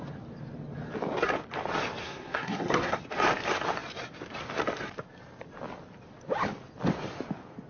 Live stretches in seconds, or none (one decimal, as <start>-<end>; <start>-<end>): 0.0-2.0; 3.0-7.7